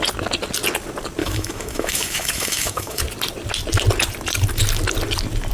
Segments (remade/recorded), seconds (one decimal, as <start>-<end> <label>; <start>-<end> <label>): 0.0-1.2 recorded; 1.2-3.0 remade; 3.0-5.5 recorded